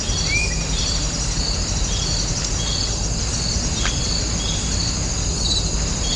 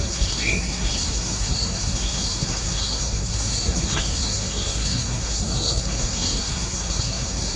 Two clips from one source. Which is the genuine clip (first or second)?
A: first